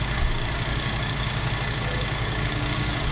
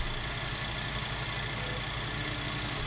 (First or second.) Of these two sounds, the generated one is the first